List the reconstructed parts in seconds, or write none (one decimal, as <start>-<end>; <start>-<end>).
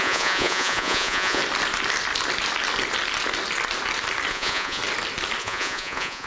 0.0-1.4; 4.3-4.8; 5.4-6.3